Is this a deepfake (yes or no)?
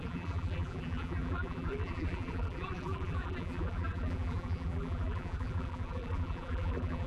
yes